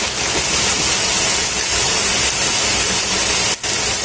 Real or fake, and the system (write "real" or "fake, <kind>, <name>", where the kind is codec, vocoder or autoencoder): real